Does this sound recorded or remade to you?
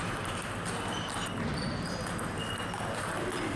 recorded